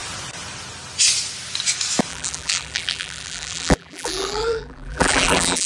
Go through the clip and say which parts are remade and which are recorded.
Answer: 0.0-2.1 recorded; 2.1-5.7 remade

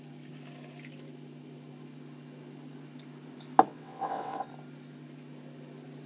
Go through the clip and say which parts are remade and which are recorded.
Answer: 0.0-3.7 recorded; 3.7-4.5 remade; 4.5-6.1 recorded

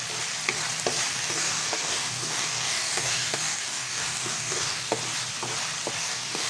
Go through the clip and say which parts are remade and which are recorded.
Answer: 0.0-1.1 recorded; 1.1-5.0 remade; 5.0-6.0 recorded; 6.0-6.5 remade

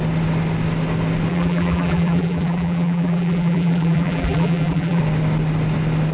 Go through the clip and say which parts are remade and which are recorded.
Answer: 0.0-1.3 recorded; 1.3-5.0 remade; 5.0-6.1 recorded

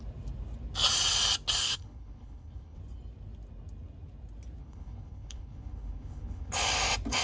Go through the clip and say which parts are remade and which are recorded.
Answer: 0.0-1.6 recorded; 1.6-2.8 remade; 2.8-4.6 recorded; 4.6-6.5 remade; 6.5-7.2 recorded